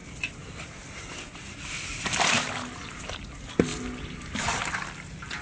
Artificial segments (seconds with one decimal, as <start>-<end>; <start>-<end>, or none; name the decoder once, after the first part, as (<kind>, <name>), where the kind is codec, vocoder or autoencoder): none